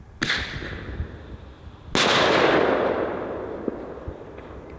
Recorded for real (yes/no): yes